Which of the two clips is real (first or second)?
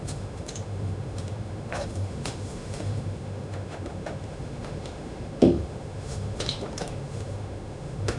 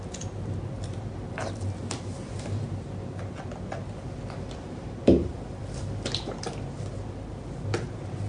second